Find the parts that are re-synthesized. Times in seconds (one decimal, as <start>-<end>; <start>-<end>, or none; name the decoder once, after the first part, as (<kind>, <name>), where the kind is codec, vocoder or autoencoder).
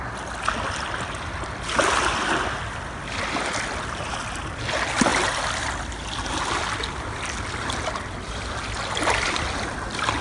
none